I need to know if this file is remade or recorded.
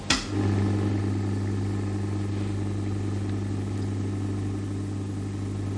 recorded